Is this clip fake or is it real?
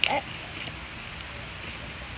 real